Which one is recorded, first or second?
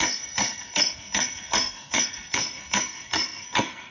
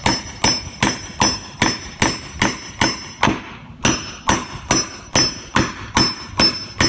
second